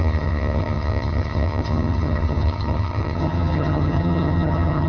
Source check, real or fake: fake